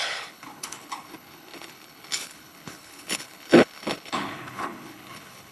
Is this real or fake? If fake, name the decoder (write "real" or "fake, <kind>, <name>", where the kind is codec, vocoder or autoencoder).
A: fake, codec, HILCodec